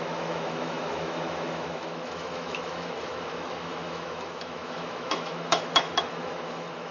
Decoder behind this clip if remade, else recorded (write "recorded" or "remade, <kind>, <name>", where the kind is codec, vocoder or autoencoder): remade, autoencoder, DAC-VAE